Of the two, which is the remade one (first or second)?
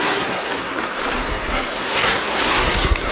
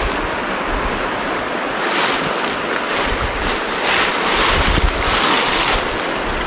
first